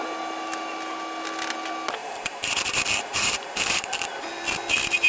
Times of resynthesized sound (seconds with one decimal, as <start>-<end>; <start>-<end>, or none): 2.0-3.9